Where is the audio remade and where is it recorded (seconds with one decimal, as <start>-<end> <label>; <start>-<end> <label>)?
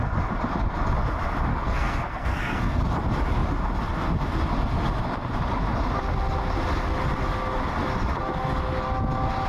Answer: 0.0-1.5 recorded; 1.5-2.8 remade; 2.8-9.5 recorded